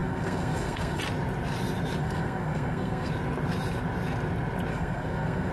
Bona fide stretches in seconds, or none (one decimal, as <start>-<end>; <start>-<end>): 1.0-2.0; 3.1-4.7